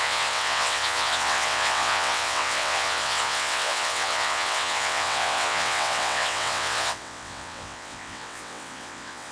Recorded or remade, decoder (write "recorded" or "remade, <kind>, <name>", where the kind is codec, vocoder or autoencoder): remade, vocoder, WaveNeXt